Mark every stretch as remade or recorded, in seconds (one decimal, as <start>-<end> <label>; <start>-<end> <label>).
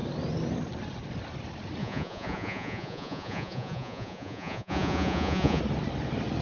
0.0-1.8 recorded; 1.8-5.6 remade; 5.6-6.4 recorded